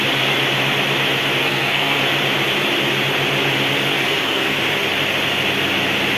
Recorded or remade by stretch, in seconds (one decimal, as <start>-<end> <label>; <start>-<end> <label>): 0.0-1.4 recorded; 1.4-2.0 remade; 2.0-3.9 recorded; 3.9-4.6 remade; 4.6-6.2 recorded